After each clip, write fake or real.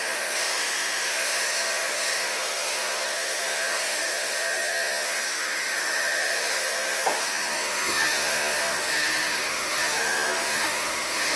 fake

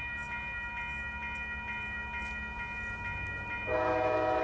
real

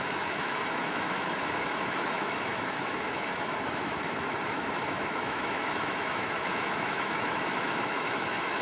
fake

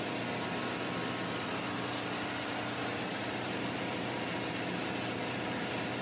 real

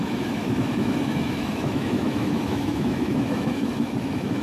fake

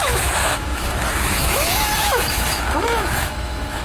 fake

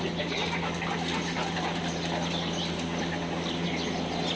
real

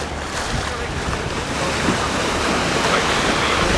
real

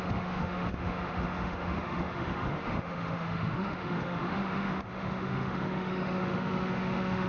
fake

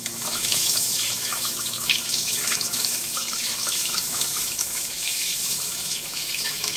fake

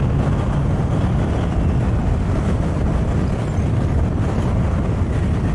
real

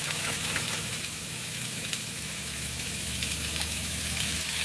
fake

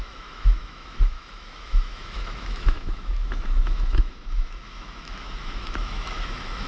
fake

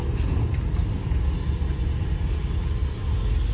real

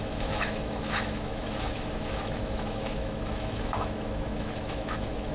fake